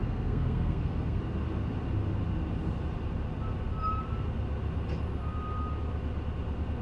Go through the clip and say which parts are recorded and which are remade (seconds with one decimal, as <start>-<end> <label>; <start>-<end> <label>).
0.0-1.2 remade; 1.2-6.8 recorded